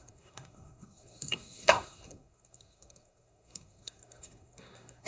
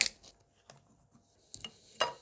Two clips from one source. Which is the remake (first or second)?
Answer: first